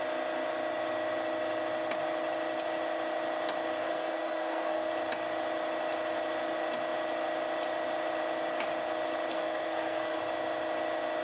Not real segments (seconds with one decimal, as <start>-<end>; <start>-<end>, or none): 3.8-4.9; 9.3-10.2